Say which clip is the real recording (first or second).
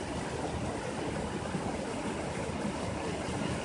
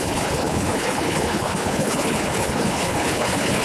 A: first